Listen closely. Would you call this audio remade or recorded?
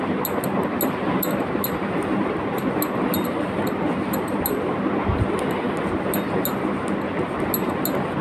recorded